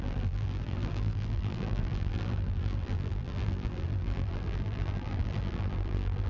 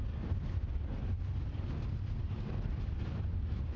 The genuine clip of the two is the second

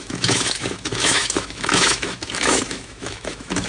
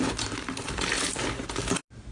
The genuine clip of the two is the second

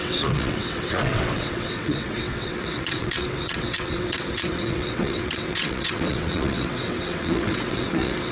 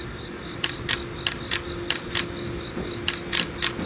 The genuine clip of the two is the second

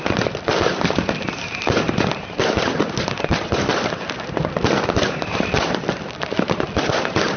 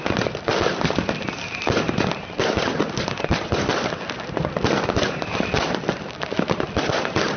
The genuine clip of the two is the second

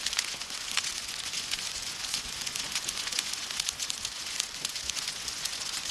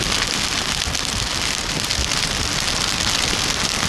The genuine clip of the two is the second